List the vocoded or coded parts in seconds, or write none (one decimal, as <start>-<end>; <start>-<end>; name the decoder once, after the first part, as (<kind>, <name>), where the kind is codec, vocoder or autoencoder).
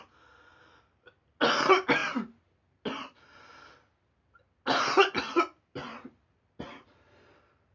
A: none